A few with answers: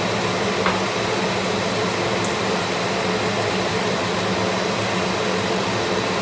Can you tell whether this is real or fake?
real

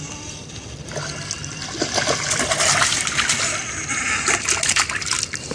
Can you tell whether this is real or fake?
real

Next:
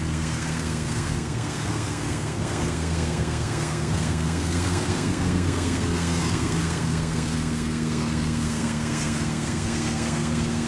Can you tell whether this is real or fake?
fake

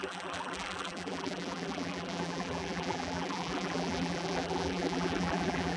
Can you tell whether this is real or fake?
fake